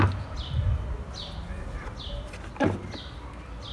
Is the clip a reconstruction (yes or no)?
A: no